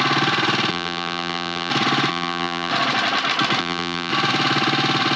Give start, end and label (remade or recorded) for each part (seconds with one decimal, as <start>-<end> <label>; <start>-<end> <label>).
0.0-0.7 recorded; 0.7-1.7 remade; 1.7-2.1 recorded; 2.1-2.7 remade; 2.7-3.6 recorded; 3.6-4.1 remade; 4.1-5.2 recorded